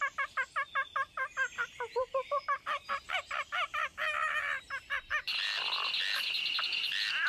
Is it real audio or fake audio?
real